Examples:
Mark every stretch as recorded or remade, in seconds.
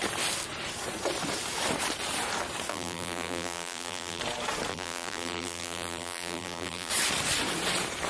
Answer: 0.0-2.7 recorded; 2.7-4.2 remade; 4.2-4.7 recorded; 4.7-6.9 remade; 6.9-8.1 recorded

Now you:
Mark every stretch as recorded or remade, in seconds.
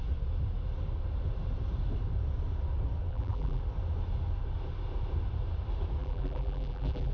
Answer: 0.0-3.1 recorded; 3.1-3.6 remade; 3.6-6.0 recorded; 6.0-7.1 remade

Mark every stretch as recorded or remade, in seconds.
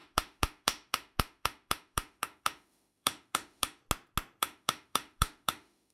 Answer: 0.0-3.8 remade; 3.8-4.4 recorded; 4.4-5.9 remade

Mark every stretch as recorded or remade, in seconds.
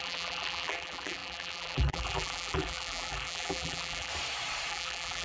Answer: 0.0-4.1 remade; 4.1-4.7 recorded; 4.7-5.2 remade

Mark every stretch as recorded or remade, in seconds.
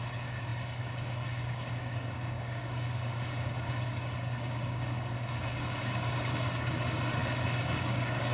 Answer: 0.0-8.3 remade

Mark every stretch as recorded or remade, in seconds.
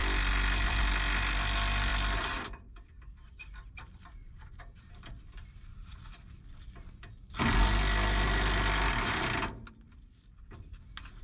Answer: 0.0-0.8 remade; 0.8-1.9 recorded; 1.9-7.1 remade; 7.1-11.2 recorded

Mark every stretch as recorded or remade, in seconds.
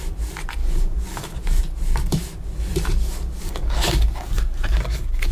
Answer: 0.0-0.6 recorded; 0.6-1.6 remade; 1.6-3.0 recorded; 3.0-5.3 remade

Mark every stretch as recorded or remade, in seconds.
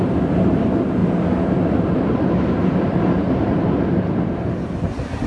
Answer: 0.0-5.3 recorded